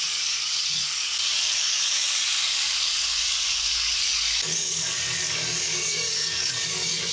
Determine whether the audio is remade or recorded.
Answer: remade